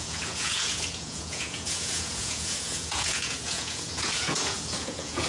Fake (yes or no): yes